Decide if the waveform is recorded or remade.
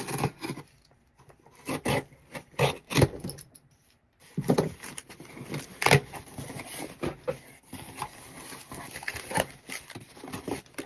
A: recorded